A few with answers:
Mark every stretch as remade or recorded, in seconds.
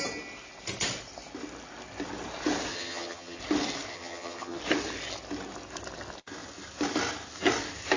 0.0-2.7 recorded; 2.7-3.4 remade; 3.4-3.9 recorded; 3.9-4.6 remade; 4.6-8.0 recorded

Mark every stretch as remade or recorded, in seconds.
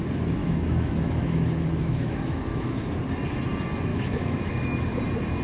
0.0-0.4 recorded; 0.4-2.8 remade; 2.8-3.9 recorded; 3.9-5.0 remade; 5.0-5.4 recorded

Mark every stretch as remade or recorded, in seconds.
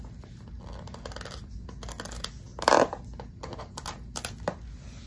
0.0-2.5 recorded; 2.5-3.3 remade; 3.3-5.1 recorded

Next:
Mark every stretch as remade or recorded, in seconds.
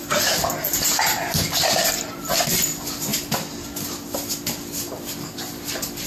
0.0-6.1 recorded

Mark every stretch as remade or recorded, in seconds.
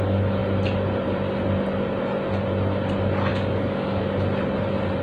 0.0-3.3 recorded; 3.3-4.0 remade; 4.0-5.0 recorded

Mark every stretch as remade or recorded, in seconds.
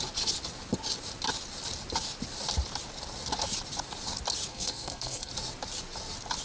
0.0-4.5 recorded; 4.5-5.3 remade; 5.3-6.4 recorded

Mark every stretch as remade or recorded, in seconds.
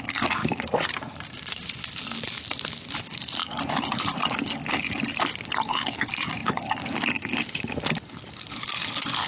0.0-0.4 recorded; 0.4-1.7 remade; 1.7-3.4 recorded; 3.4-4.2 remade; 4.2-6.4 recorded; 6.4-7.8 remade; 7.8-9.3 recorded